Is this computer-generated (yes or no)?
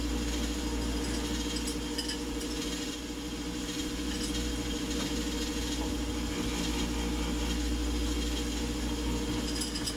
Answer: no